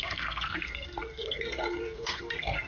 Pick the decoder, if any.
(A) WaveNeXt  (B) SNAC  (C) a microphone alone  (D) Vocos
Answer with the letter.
B